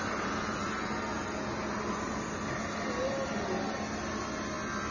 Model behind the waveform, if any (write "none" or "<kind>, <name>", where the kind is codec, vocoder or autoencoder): none